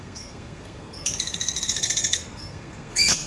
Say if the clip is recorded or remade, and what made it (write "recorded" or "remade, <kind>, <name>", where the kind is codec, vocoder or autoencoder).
remade, codec, SNAC